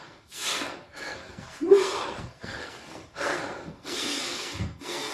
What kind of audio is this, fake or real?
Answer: fake